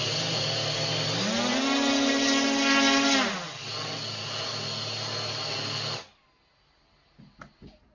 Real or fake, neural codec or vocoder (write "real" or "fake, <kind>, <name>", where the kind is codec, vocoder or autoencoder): real